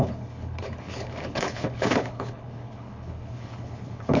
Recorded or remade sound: remade